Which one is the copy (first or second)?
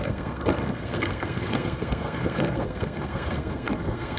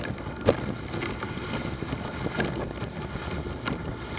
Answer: first